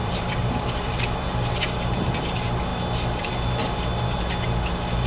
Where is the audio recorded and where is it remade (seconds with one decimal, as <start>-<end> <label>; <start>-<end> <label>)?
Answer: 0.0-2.2 remade; 2.2-5.1 recorded